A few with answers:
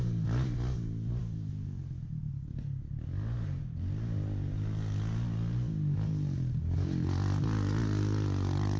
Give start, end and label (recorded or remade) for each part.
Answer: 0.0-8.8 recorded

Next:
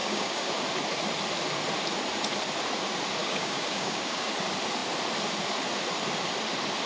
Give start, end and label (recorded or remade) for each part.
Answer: 0.0-0.5 remade; 0.5-3.2 recorded; 3.2-4.3 remade; 4.3-6.9 recorded

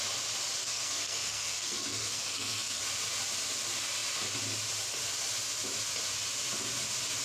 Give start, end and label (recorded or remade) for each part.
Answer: 0.0-0.6 recorded; 0.6-2.8 remade; 2.8-7.2 recorded

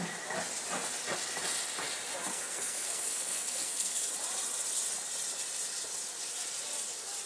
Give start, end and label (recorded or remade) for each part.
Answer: 0.0-2.3 recorded; 2.3-4.1 remade; 4.1-7.3 recorded